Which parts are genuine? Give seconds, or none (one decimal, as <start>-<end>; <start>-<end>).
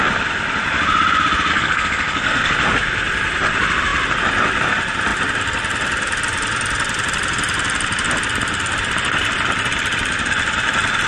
0.0-1.5; 2.5-11.1